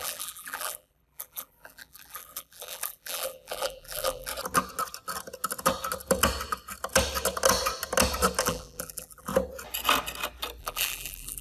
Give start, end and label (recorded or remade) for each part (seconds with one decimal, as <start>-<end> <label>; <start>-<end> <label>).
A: 0.0-4.3 remade; 4.3-8.4 recorded; 8.4-9.3 remade; 9.3-10.6 recorded; 10.6-11.4 remade